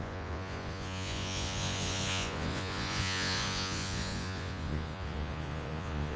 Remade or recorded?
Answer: remade